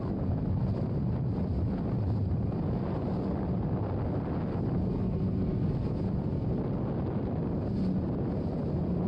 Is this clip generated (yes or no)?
no